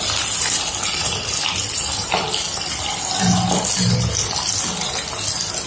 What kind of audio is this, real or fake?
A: real